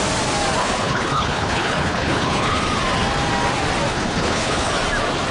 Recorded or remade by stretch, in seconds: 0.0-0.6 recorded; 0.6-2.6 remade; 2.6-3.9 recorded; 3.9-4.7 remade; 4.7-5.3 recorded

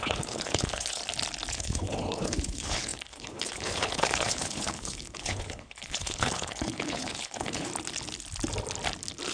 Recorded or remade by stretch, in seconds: 0.0-1.0 remade; 1.0-1.5 recorded; 1.5-7.7 remade; 7.7-9.3 recorded

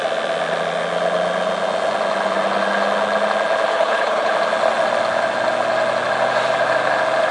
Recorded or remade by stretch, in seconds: 0.0-3.7 recorded; 3.7-4.3 remade; 4.3-7.3 recorded

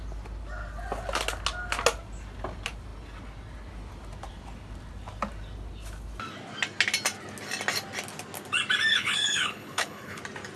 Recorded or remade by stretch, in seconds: 0.0-8.9 recorded; 8.9-10.2 remade; 10.2-10.6 recorded